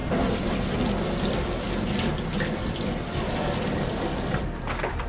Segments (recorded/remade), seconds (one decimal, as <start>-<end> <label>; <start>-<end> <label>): 0.0-5.1 remade